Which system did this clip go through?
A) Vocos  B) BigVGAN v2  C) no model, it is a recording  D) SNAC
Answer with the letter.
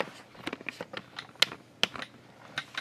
C